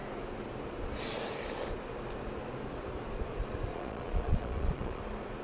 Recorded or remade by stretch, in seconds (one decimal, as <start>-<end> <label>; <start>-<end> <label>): 0.0-3.7 recorded; 3.7-5.0 remade; 5.0-5.4 recorded